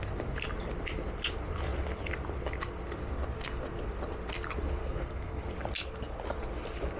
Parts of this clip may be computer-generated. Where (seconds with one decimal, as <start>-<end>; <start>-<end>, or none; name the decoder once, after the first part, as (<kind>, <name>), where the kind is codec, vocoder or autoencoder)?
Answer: 4.8-5.4 (codec, SNAC)